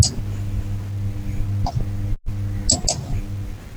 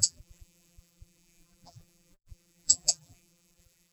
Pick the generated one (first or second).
second